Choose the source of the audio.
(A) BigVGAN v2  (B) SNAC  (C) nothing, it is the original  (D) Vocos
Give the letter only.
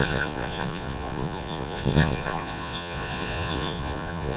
D